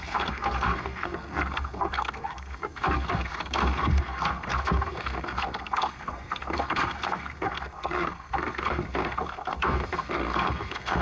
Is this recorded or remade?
remade